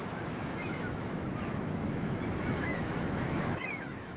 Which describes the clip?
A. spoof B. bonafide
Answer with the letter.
A